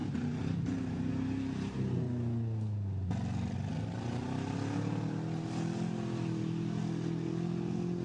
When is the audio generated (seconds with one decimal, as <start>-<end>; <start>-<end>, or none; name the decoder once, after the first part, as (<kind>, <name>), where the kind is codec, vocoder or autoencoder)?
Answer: 0.0-1.1 (vocoder, BigVGAN v2)